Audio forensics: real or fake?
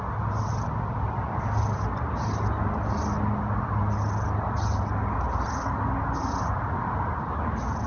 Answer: real